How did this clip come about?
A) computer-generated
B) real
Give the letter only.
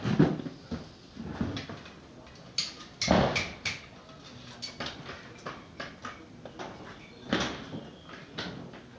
B